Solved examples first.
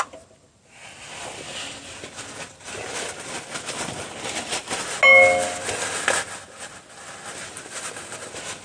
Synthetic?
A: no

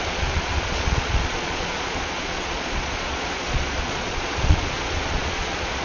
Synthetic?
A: yes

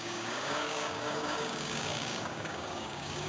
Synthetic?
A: yes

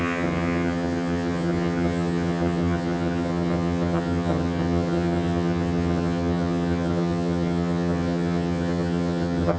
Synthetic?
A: yes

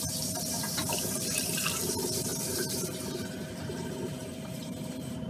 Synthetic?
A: yes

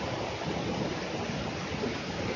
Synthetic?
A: no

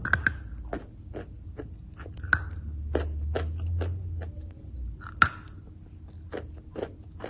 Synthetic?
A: no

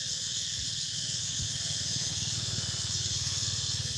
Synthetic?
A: yes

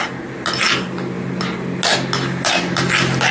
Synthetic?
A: no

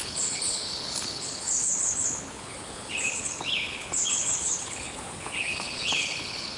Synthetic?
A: yes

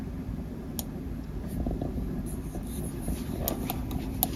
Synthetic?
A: no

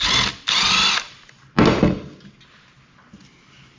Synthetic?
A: no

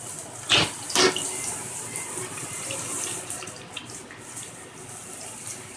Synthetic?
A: yes